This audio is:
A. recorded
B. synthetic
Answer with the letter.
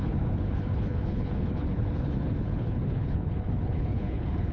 B